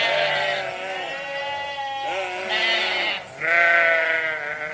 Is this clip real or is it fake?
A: real